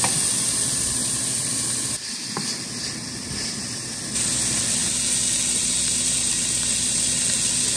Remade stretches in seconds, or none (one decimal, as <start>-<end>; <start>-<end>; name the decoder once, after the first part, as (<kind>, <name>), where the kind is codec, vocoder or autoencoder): none

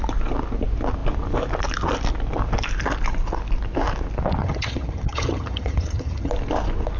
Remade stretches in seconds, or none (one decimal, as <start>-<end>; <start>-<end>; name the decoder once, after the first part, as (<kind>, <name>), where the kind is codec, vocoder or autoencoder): 4.4-6.3 (vocoder, HiFi-GAN)

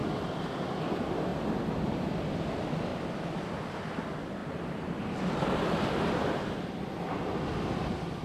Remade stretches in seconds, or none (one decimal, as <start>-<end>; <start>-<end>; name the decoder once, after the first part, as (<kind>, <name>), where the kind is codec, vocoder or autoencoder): none

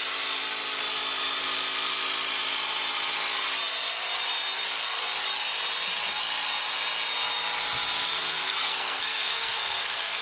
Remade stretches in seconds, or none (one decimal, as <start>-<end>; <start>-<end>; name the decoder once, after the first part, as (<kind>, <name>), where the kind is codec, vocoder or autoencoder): 8.1-10.2 (codec, SNAC)